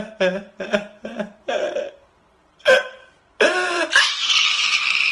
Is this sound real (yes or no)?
no